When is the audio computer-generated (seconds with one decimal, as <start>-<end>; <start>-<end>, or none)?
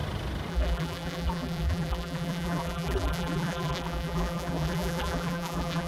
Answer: 0.5-5.9